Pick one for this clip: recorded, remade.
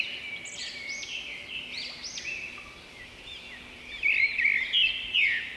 recorded